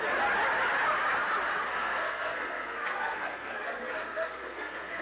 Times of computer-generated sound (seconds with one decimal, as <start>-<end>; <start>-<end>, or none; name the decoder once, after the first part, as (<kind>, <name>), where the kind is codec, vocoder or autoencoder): 1.7-5.0 (codec, SNAC)

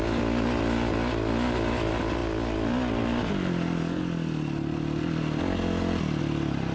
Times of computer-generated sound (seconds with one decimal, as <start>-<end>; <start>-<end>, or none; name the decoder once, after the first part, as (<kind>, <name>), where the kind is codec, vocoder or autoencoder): none

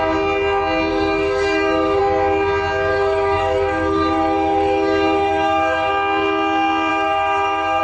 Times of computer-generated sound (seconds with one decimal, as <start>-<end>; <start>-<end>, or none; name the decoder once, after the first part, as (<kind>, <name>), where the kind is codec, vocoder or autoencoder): 0.9-2.0 (codec, DAC); 2.9-5.9; 6.9-7.8